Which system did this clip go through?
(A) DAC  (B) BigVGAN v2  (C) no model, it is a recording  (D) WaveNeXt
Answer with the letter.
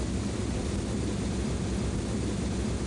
B